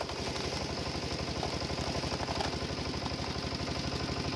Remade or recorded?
recorded